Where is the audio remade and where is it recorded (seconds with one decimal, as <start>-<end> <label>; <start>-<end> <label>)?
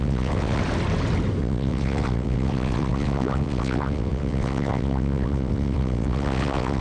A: 0.0-0.6 remade; 0.6-1.4 recorded; 1.4-6.8 remade